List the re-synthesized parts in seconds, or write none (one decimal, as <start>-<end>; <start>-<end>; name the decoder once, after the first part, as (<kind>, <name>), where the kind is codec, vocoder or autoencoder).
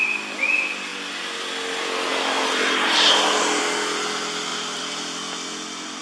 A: none